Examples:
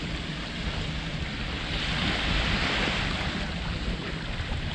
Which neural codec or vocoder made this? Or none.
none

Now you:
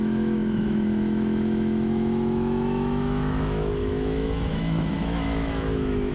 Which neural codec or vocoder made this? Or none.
autoencoder, DAC-VAE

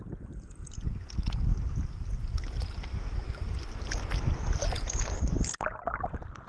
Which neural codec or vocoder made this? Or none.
none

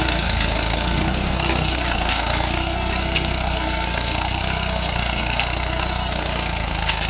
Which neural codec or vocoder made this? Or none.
codec, SNAC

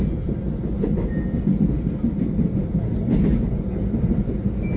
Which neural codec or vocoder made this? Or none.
none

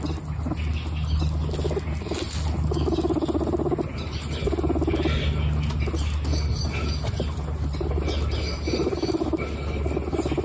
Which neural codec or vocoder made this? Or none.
none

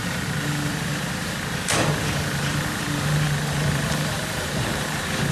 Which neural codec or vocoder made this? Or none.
vocoder, BigVGAN v2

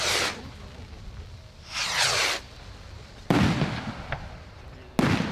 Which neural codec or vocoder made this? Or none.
none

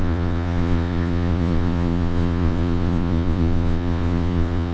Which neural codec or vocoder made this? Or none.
vocoder, Vocos